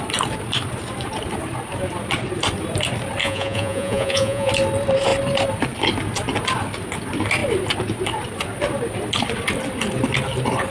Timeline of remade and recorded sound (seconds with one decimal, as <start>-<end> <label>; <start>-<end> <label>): 0.0-3.2 recorded; 3.2-4.5 remade; 4.5-10.7 recorded